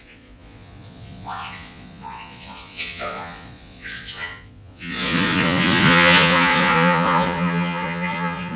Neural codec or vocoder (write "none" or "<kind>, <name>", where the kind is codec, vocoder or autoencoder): vocoder, Vocos